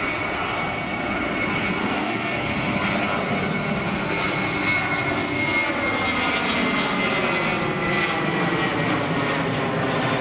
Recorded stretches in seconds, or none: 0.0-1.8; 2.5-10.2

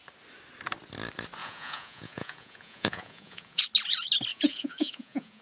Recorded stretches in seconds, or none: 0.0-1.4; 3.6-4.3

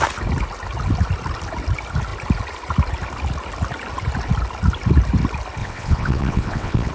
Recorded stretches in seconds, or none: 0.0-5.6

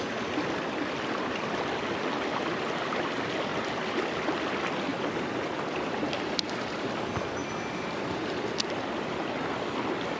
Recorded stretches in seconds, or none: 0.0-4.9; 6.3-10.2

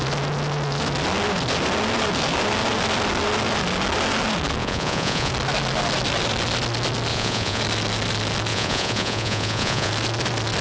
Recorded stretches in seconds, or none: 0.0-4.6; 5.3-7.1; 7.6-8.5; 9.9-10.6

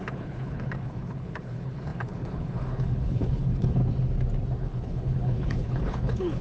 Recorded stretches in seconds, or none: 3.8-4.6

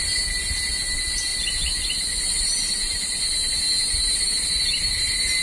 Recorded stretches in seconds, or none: 0.0-5.4